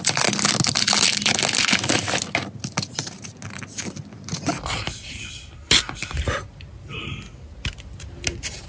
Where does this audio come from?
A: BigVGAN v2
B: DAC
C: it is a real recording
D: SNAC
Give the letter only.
C